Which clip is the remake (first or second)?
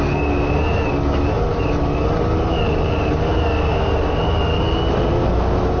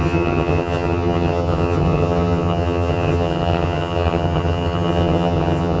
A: second